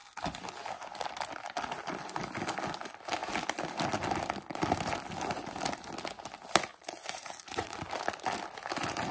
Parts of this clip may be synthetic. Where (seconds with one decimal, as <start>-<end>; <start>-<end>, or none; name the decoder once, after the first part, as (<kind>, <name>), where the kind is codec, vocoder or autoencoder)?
6.7-7.8 (vocoder, Vocos)